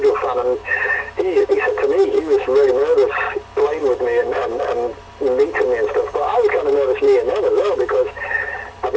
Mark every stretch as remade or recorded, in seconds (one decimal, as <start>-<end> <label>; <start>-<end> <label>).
0.0-0.6 recorded; 0.6-2.7 remade; 2.7-3.8 recorded; 3.8-4.5 remade; 4.5-6.2 recorded; 6.2-8.5 remade; 8.5-9.0 recorded